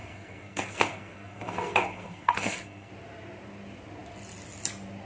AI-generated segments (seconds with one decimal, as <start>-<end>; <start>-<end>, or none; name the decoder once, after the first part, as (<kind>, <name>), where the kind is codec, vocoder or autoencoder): 0.0-2.9 (codec, SNAC)